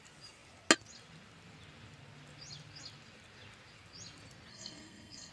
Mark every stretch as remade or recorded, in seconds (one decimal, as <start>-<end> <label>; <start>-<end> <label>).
0.0-4.5 recorded; 4.5-5.3 remade